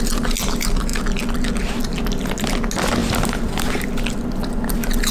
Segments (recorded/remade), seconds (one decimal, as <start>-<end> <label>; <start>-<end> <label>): 0.0-5.1 recorded